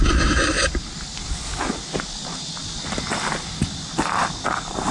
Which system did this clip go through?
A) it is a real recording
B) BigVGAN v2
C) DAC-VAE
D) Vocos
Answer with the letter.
A